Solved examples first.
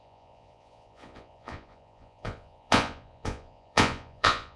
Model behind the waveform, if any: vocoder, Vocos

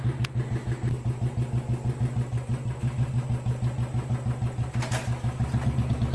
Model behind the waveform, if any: none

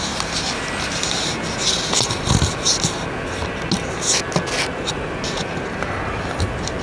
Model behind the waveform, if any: none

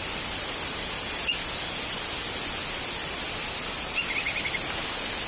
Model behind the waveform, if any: none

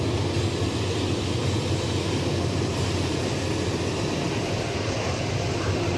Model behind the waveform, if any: vocoder, BigVGAN v2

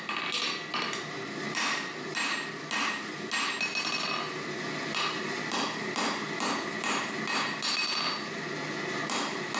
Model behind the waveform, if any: none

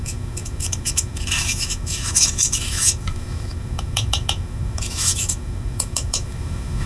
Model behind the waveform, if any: autoencoder, DAC-VAE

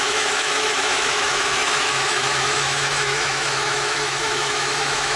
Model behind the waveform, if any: autoencoder, DAC-VAE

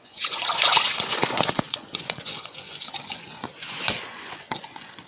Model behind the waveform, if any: vocoder, Vocos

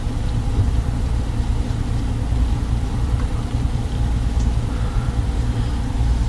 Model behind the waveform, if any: vocoder, BigVGAN v2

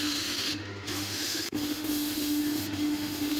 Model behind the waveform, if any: autoencoder, DAC-VAE